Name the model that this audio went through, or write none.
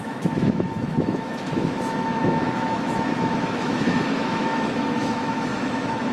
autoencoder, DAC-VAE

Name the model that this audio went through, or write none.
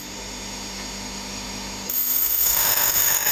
autoencoder, DAC-VAE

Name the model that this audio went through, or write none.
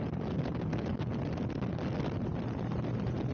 none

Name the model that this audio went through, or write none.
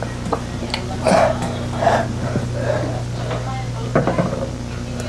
none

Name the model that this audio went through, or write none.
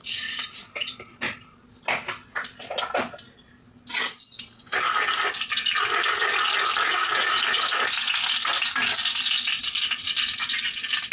none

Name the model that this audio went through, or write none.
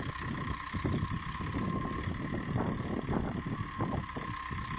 none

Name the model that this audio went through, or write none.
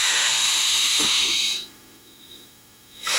autoencoder, DAC-VAE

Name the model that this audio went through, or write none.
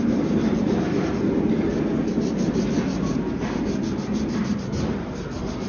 none